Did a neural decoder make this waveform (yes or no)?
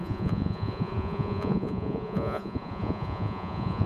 yes